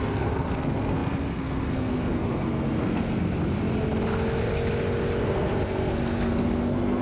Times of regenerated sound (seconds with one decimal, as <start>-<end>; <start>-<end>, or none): 0.0-3.4; 5.2-7.0

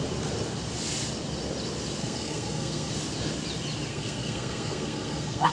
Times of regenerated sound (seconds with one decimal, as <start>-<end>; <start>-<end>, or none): 2.0-2.9; 3.9-5.5

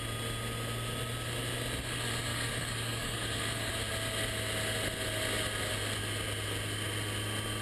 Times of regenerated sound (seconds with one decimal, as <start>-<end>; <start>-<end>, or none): 2.3-3.7

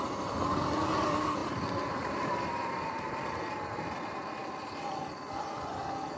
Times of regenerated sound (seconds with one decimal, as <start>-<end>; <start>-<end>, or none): 1.4-3.7; 4.4-4.9

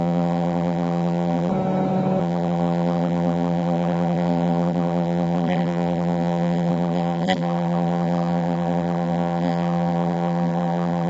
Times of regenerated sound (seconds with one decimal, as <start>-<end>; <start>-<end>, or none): 0.0-1.5; 2.2-11.1

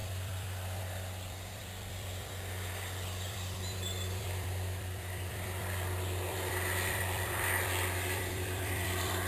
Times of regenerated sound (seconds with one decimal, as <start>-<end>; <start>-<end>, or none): 0.0-9.3

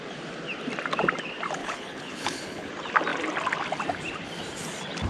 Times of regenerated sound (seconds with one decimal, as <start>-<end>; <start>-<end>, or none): 1.6-2.7

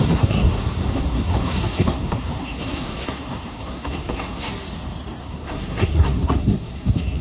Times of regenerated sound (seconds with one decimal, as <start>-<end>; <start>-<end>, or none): 0.0-4.5; 5.2-7.2